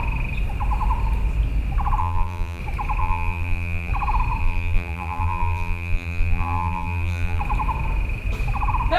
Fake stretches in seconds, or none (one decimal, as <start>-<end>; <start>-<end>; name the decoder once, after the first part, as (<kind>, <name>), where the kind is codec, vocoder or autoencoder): 2.0-2.6 (vocoder, BigVGAN v2); 3.0-3.9; 4.4-7.4